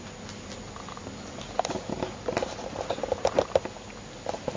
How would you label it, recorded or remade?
recorded